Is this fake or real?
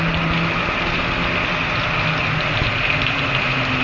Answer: real